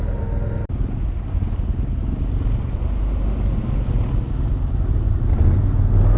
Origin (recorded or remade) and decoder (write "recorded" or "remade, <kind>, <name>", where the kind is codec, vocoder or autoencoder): recorded